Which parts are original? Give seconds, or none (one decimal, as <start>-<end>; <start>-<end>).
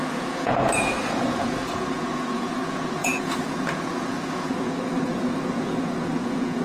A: none